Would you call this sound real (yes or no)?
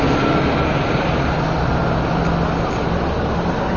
yes